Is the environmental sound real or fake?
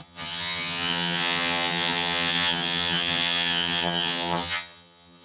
fake